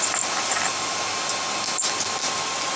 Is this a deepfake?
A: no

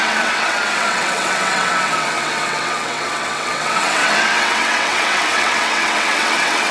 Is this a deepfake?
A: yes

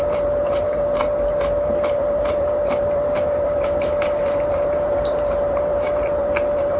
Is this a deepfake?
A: yes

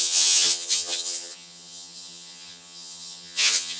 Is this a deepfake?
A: yes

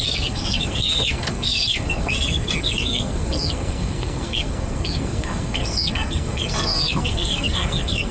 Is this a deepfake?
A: yes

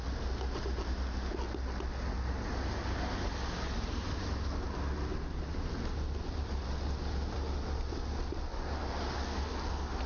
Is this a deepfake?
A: no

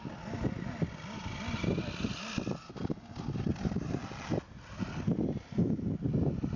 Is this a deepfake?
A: no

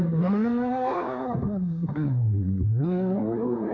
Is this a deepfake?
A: yes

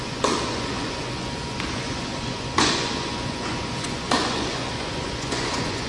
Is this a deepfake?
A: yes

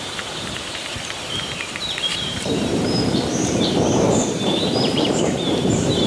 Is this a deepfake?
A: yes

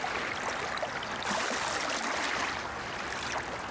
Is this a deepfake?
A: no